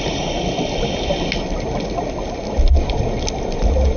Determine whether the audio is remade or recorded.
recorded